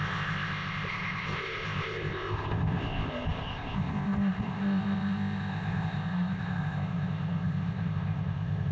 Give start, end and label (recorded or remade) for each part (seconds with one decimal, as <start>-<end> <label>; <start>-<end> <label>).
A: 0.0-8.7 remade

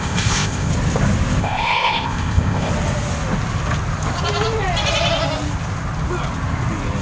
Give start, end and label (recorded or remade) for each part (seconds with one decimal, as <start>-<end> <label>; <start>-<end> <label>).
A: 0.0-0.7 remade; 0.7-1.4 recorded; 1.4-2.7 remade; 2.7-7.0 recorded

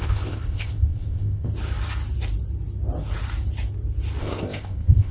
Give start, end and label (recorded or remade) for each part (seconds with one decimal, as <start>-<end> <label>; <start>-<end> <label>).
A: 0.0-1.5 remade; 1.5-4.2 recorded; 4.2-5.1 remade

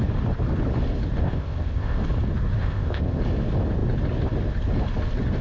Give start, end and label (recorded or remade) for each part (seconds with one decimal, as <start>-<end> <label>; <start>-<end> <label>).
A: 0.0-1.2 recorded; 1.2-2.0 remade; 2.0-2.6 recorded; 2.6-3.2 remade; 3.2-5.4 recorded